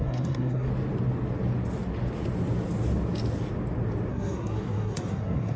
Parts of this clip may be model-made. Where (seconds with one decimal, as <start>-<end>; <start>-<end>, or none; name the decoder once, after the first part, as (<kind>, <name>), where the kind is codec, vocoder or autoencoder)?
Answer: 0.0-0.7 (codec, SNAC); 4.1-5.6